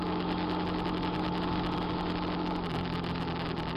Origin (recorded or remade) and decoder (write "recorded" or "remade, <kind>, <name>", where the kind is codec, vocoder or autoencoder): recorded